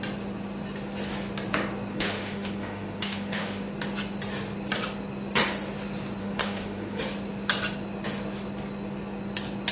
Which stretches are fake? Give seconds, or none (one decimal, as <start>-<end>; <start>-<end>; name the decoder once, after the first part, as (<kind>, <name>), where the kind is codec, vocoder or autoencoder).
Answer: 1.9-3.6 (autoencoder, DAC-VAE); 6.2-7.0